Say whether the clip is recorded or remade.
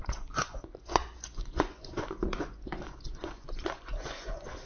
remade